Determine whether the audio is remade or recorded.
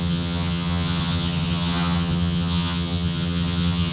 remade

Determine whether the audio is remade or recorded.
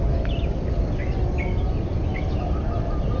recorded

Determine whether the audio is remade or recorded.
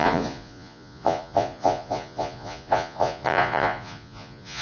remade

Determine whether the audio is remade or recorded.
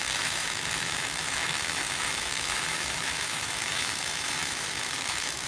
remade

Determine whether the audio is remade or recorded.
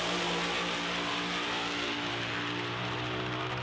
recorded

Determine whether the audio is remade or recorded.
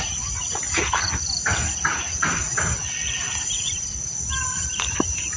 recorded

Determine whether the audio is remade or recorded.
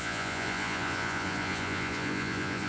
remade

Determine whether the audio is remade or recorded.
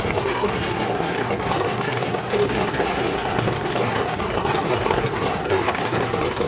remade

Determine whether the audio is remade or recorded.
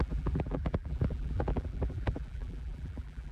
remade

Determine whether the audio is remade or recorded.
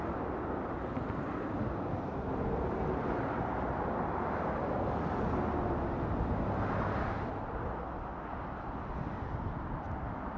recorded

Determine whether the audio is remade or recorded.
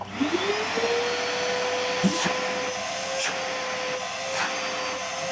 recorded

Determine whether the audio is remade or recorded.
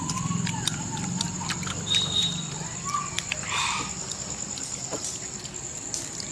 remade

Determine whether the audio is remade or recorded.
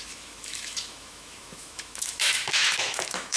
remade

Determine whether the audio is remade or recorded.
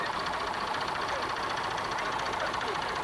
recorded